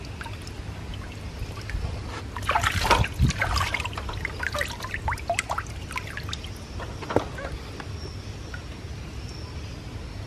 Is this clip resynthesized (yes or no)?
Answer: no